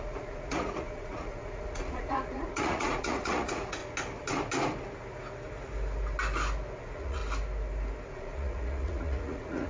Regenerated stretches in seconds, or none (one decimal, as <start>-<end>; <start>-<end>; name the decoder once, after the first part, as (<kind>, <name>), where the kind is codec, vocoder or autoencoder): 0.0-3.8 (vocoder, Vocos); 6.8-7.2; 8.1-9.7